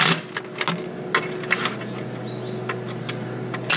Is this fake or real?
real